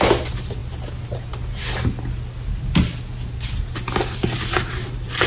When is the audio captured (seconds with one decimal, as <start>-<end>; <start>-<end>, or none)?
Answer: 0.0-5.3